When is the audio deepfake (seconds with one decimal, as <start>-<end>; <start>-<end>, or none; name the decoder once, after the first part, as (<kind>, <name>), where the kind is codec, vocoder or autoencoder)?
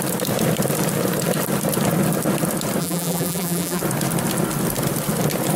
2.8-3.8 (vocoder, BigVGAN v2)